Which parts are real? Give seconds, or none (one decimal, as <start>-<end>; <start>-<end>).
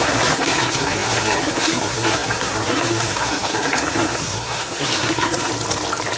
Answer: 5.5-6.2